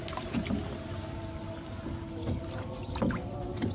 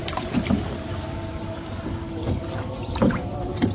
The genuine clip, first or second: first